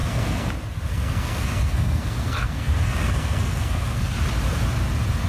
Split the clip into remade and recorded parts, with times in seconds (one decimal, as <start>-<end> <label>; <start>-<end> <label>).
0.0-0.5 remade; 0.5-0.9 recorded; 0.9-4.1 remade; 4.1-5.3 recorded